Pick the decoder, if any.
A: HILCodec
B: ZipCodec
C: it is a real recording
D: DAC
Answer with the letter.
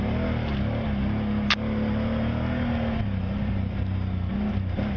C